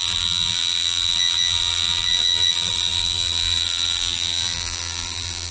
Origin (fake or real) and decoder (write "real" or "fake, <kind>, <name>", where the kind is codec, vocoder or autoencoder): fake, vocoder, BigVGAN v2